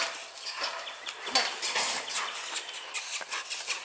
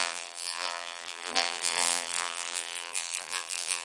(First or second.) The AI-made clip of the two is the second